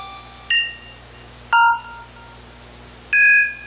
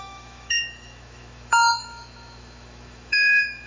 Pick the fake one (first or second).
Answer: second